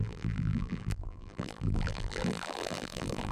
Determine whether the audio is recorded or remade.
remade